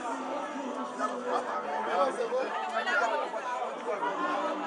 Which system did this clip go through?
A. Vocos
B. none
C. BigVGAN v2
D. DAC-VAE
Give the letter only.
B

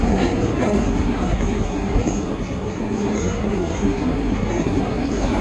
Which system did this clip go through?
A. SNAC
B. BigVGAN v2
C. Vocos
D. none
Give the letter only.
A